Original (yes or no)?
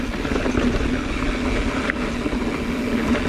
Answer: yes